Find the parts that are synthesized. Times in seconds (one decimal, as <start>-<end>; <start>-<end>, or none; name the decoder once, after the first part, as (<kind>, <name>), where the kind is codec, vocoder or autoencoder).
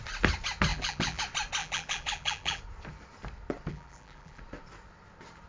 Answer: 0.7-1.2 (vocoder, BigVGAN v2); 1.6-2.6; 3.7-4.4